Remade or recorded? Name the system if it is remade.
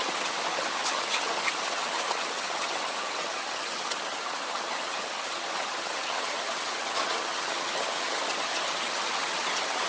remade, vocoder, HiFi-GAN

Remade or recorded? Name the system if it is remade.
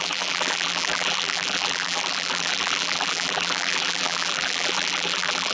remade, vocoder, BigVGAN v2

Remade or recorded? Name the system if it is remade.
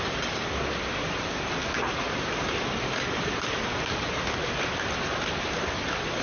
recorded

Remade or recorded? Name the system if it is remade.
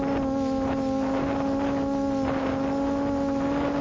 recorded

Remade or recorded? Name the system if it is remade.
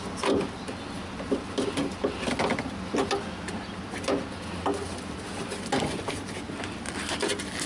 recorded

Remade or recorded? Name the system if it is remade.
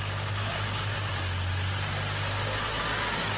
recorded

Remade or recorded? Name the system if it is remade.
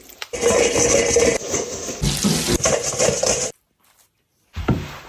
recorded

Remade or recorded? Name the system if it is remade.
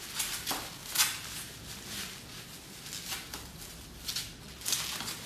recorded